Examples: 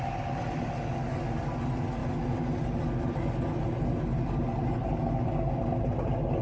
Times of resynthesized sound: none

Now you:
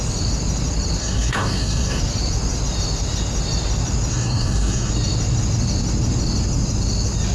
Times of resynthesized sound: 1.0-2.0 (codec, SNAC); 4.1-4.9